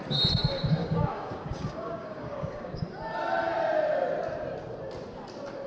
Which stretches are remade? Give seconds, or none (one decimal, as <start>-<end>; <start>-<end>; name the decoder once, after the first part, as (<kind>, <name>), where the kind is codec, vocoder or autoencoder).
0.8-2.7 (codec, DAC)